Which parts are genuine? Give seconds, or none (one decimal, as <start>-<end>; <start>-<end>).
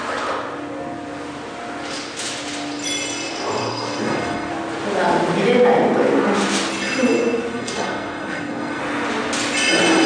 0.0-3.6; 4.5-7.5; 8.8-10.1